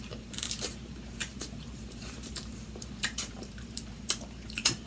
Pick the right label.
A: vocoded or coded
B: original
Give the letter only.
A